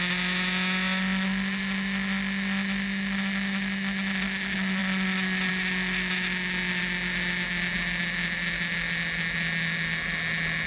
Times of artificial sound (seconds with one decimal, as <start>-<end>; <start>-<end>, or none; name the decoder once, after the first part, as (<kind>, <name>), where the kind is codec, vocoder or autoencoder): none